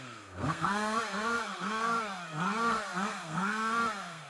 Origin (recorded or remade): remade